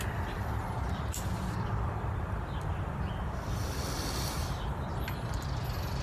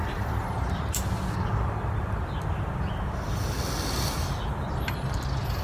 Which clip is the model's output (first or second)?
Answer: first